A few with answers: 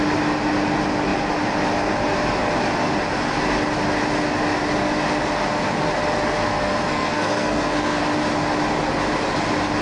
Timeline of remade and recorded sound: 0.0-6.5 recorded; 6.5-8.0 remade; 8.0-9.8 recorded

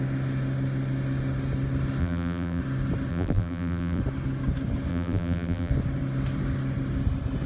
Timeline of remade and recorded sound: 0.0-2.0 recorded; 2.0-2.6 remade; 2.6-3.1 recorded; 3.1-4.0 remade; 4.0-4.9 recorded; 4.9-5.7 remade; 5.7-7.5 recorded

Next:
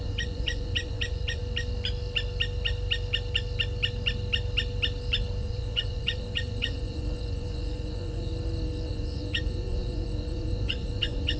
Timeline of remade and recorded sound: 0.0-1.4 remade; 1.4-5.4 recorded; 5.4-8.3 remade; 8.3-8.9 recorded; 8.9-11.4 remade

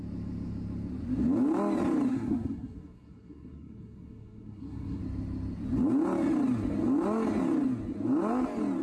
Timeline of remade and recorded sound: 0.0-2.1 recorded; 2.1-5.0 remade; 5.0-8.8 recorded

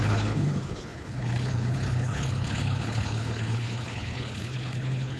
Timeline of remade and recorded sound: 0.0-5.2 remade

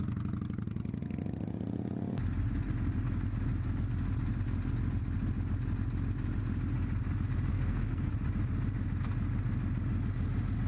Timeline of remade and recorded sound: 0.0-7.5 recorded; 7.5-8.1 remade; 8.1-10.7 recorded